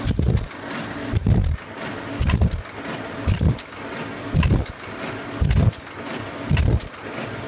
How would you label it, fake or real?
real